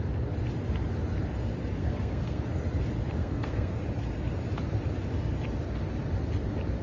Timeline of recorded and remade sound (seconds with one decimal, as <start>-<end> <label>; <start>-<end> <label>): 0.0-1.8 recorded; 1.8-2.4 remade; 2.4-3.2 recorded; 3.2-3.8 remade; 3.8-6.8 recorded